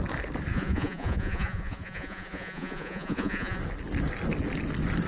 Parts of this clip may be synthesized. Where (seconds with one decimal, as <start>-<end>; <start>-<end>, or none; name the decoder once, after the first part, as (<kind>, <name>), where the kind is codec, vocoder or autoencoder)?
0.5-3.6 (vocoder, Vocos)